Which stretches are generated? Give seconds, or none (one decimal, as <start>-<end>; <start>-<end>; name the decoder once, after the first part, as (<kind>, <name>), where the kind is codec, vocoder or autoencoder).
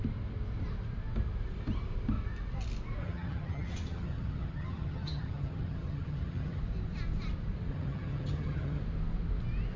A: 3.0-6.6 (vocoder, HiFi-GAN); 7.7-8.8